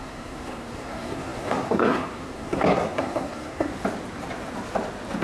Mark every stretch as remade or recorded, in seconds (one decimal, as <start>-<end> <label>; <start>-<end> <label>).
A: 0.0-3.7 remade; 3.7-5.2 recorded